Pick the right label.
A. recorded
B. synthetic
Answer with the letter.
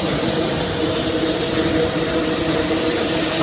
A